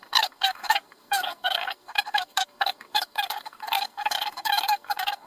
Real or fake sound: fake